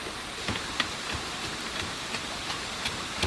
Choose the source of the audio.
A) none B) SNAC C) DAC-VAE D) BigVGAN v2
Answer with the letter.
D